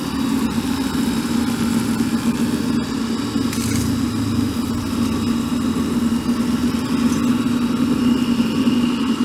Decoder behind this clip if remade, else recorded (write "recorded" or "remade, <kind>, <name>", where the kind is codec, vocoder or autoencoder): recorded